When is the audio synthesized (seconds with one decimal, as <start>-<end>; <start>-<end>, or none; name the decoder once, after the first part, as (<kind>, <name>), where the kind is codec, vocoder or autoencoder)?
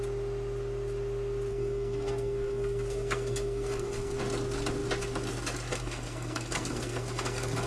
1.5-4.2 (codec, SNAC); 5.7-7.7